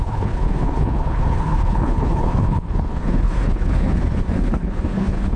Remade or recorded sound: remade